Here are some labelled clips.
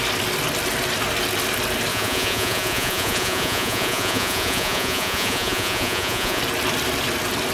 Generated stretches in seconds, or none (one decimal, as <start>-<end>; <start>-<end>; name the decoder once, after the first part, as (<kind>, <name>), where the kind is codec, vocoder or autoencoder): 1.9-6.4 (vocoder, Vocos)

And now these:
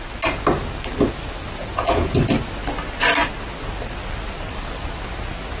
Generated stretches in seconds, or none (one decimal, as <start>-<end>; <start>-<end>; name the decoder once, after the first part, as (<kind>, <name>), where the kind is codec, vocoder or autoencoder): 1.6-2.2 (vocoder, Vocos)

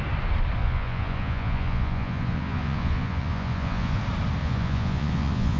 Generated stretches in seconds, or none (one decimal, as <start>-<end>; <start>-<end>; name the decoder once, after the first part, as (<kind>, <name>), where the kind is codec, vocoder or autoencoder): 0.6-4.0 (vocoder, Vocos); 4.4-5.6

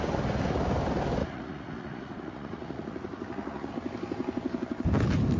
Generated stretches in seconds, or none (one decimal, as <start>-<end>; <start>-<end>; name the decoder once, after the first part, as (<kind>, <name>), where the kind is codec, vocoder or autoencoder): 1.2-3.7 (vocoder, Vocos)

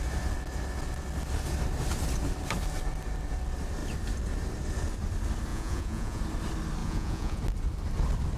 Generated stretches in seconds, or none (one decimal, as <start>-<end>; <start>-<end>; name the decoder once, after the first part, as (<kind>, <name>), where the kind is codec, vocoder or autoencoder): 5.5-6.2 (vocoder, Vocos); 6.8-7.4

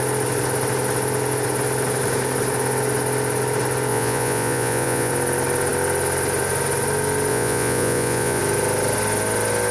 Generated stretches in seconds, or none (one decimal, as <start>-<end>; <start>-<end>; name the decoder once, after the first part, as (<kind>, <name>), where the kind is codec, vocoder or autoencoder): 3.9-5.1 (vocoder, Vocos); 7.3-8.4

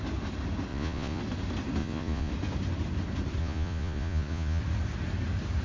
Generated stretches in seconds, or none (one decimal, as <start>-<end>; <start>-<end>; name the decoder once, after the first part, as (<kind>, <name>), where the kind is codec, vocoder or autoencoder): 0.7-1.2 (vocoder, Vocos); 1.8-2.3; 3.4-4.6

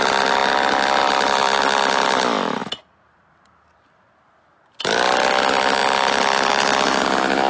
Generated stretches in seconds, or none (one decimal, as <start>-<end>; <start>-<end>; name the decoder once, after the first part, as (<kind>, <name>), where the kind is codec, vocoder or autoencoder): none